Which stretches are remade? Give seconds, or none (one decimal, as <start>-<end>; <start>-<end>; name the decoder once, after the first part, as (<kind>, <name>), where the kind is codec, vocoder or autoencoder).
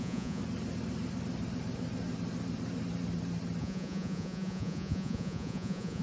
0.0-0.4 (vocoder, Vocos); 3.6-6.0